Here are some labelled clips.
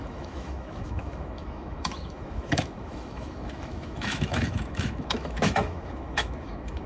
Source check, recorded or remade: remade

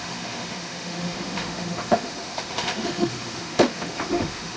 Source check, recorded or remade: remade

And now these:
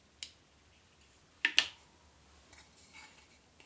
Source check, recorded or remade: recorded